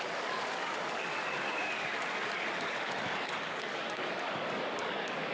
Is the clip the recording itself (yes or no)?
no